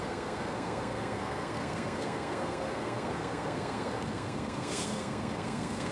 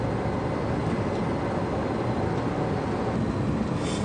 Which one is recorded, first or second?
second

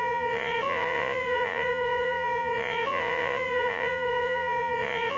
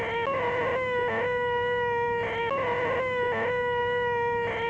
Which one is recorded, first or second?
second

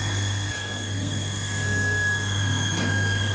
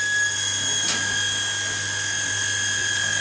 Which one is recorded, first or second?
second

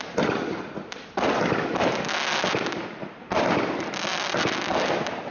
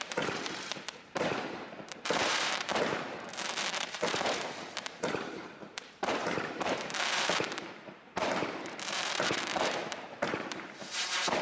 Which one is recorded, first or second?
first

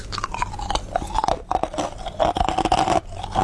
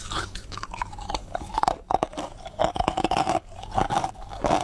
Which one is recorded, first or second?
first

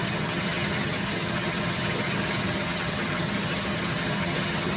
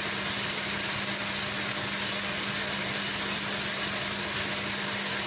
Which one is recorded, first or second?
second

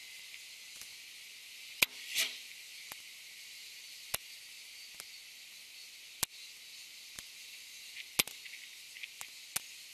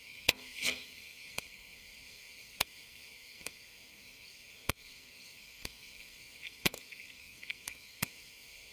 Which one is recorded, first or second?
first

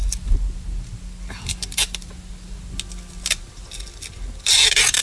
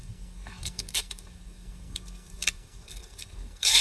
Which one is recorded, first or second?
first